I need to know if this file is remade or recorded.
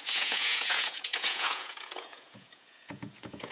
remade